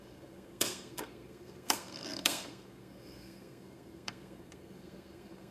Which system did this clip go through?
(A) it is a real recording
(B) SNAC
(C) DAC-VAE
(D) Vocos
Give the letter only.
B